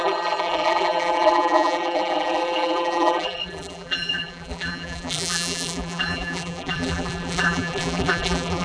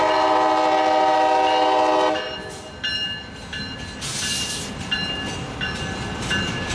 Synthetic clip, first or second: first